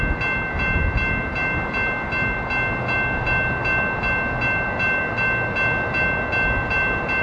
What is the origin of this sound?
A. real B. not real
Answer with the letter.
A